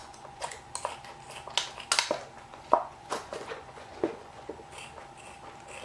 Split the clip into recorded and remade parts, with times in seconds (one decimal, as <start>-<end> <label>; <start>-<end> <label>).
0.0-0.7 remade; 0.7-2.5 recorded; 2.5-4.5 remade; 4.5-5.8 recorded